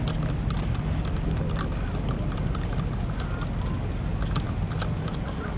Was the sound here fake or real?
real